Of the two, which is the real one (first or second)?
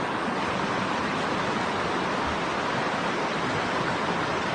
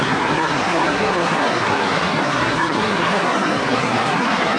first